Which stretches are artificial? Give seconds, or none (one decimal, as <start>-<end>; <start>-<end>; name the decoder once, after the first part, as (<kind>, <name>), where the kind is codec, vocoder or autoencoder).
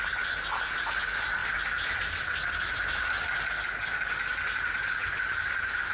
1.4-3.0 (vocoder, BigVGAN v2); 5.0-5.9